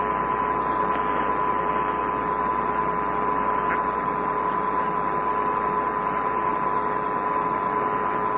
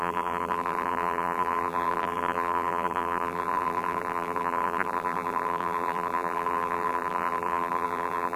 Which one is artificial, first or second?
second